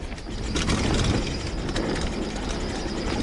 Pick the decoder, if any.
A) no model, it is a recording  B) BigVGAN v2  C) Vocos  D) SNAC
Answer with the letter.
A